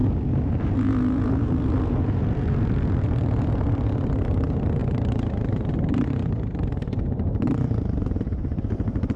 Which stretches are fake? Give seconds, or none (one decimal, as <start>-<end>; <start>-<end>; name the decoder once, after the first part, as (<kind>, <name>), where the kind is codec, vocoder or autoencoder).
0.0-2.2 (vocoder, BigVGAN v2); 4.8-8.6